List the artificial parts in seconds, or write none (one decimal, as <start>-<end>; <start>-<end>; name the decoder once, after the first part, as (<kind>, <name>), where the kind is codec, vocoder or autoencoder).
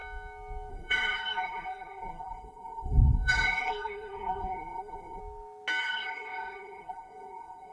0.7-5.2 (codec, SNAC); 5.8-7.7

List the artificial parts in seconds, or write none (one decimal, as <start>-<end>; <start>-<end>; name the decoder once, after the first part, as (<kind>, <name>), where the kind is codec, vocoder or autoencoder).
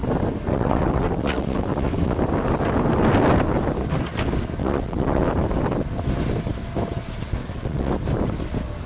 0.5-2.2 (vocoder, WaveNeXt); 4.6-5.3; 7.4-7.9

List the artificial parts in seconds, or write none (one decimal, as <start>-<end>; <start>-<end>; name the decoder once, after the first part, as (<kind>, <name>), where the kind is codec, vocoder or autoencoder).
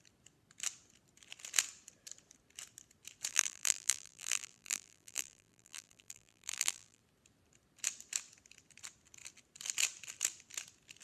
3.3-7.0 (vocoder, BigVGAN v2)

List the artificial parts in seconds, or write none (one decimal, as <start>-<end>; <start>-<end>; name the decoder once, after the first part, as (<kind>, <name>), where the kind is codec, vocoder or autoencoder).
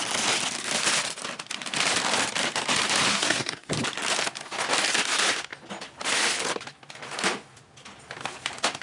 3.1-3.7 (codec, SNAC)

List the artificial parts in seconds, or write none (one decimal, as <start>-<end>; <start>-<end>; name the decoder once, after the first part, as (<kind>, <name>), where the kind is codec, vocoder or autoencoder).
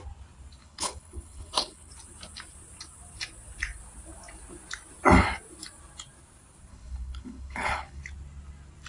0.6-1.9 (codec, HILCodec); 6.7-8.0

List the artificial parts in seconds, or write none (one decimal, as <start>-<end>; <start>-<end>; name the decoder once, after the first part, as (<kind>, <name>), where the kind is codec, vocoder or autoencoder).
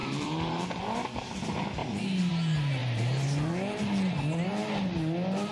0.0-0.8 (vocoder, BigVGAN v2)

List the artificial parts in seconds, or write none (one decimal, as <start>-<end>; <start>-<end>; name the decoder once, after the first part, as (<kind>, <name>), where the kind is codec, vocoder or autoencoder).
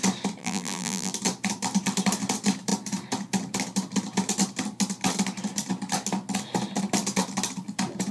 0.4-1.1 (vocoder, BigVGAN v2)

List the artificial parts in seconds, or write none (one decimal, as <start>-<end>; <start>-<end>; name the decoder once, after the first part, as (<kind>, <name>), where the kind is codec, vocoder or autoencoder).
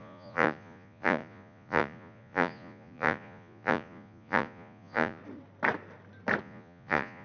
0.0-5.2 (vocoder, Vocos); 6.4-7.2